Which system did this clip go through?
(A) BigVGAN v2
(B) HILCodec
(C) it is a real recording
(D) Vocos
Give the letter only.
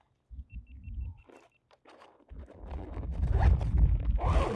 C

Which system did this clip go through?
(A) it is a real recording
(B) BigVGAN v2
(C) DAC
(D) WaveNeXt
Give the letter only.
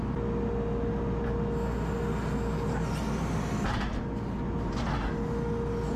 A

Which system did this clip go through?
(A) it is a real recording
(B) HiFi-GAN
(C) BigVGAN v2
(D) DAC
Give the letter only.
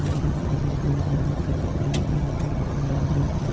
B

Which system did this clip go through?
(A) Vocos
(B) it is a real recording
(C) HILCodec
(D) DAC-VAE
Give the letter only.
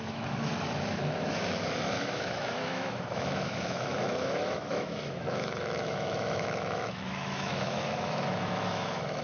D